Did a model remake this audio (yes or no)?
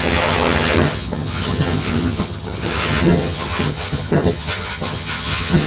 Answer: yes